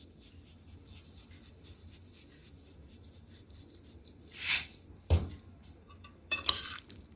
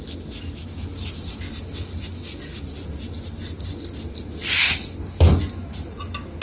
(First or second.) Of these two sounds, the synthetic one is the first